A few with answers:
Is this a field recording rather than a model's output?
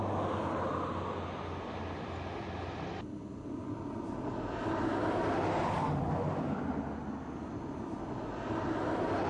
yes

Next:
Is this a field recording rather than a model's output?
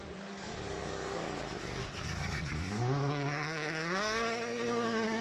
no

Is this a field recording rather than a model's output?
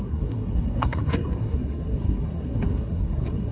no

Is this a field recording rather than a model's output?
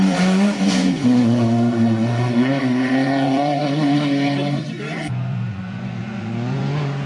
no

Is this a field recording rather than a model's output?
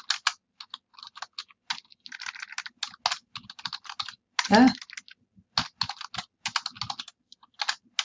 yes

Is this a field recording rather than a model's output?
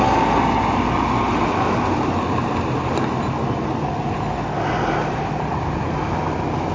yes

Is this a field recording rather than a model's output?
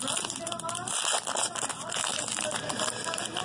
yes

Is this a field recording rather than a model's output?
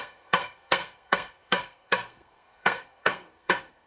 no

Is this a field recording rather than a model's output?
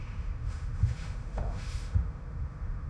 no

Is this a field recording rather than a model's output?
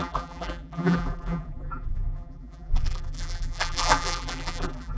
no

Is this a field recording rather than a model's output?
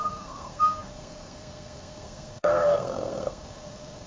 no